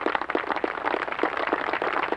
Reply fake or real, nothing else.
real